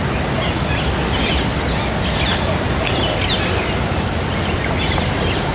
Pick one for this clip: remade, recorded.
recorded